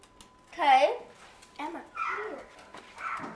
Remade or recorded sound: recorded